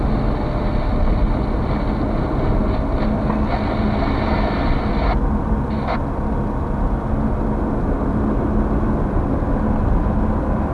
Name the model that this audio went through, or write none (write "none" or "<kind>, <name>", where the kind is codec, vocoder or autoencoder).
none